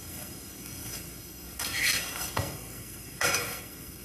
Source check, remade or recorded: remade